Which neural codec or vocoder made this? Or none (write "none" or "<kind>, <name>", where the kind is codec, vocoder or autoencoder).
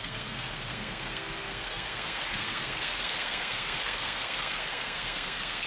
codec, SNAC